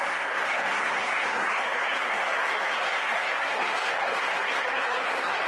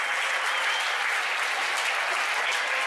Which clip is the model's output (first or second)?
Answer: first